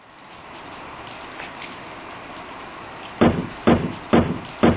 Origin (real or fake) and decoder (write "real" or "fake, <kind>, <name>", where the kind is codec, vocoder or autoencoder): real